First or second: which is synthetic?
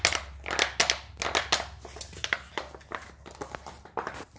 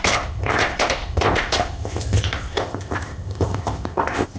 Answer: second